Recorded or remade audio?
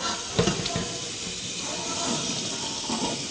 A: recorded